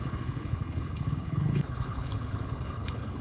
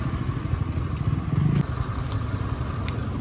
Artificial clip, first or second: first